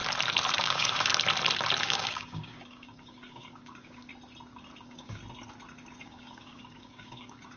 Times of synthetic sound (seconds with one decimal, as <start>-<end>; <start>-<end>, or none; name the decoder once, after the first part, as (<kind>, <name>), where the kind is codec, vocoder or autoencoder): 0.6-1.1 (codec, DAC); 1.8-4.1; 4.8-5.2; 6.0-7.6